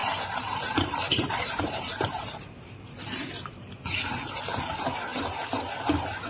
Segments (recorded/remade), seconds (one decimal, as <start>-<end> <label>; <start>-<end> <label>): 0.0-3.8 remade; 3.8-5.1 recorded; 5.1-5.7 remade; 5.7-6.3 recorded